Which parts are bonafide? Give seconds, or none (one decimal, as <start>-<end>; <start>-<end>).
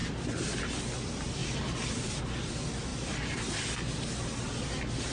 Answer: 0.0-1.4; 2.2-2.9; 4.5-5.1